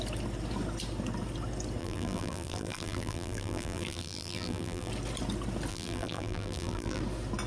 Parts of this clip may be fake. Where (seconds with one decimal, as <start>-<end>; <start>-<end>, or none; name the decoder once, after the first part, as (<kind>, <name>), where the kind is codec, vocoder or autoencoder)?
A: 1.8-4.9 (vocoder, BigVGAN v2); 5.7-7.0